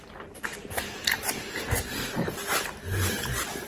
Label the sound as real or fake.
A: real